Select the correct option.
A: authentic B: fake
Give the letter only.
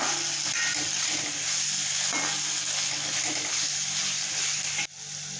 A